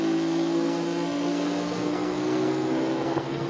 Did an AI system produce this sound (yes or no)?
yes